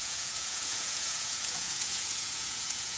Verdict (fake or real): fake